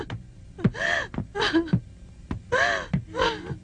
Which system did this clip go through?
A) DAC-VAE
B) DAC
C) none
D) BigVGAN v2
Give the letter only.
C